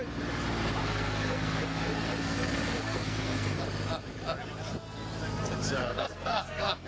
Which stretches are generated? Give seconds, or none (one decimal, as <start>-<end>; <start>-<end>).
0.8-3.6; 5.8-6.9